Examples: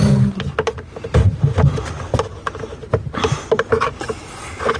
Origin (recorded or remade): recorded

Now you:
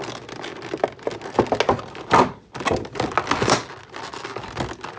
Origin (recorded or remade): recorded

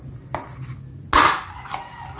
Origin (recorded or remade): recorded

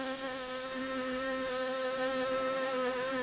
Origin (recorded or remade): remade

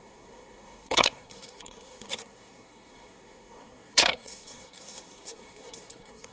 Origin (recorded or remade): remade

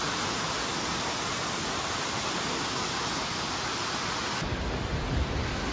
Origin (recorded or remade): recorded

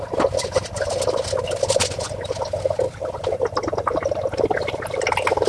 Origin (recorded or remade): recorded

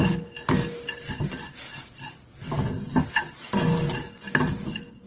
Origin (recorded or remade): recorded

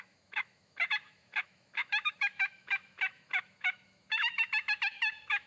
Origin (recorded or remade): remade